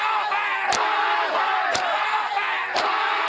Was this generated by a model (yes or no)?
no